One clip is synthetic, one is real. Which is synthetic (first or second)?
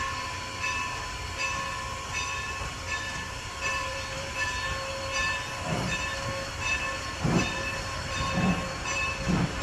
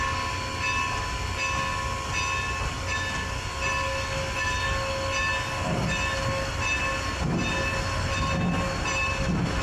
first